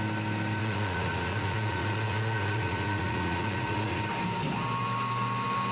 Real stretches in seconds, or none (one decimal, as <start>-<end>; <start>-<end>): 0.0-0.6; 4.0-5.7